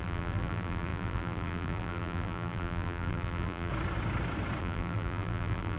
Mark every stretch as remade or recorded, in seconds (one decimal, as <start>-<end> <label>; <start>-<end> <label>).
0.0-3.7 remade; 3.7-4.6 recorded; 4.6-5.8 remade